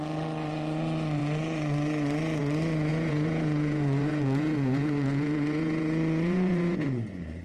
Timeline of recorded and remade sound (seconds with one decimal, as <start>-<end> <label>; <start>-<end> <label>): 0.0-2.9 recorded; 2.9-7.4 remade